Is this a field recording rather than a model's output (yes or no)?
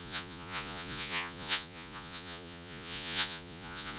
no